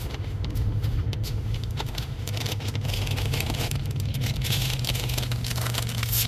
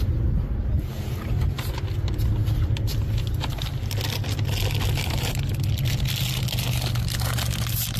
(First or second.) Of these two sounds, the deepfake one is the first